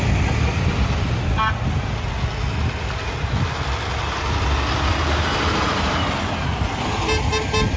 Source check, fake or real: real